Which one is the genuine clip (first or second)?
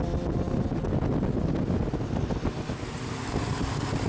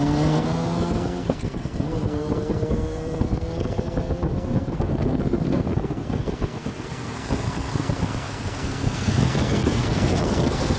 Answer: first